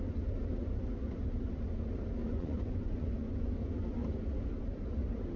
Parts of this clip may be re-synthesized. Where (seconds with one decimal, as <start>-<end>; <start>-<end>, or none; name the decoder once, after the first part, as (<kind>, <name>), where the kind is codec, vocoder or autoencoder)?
2.2-3.5 (vocoder, Vocos)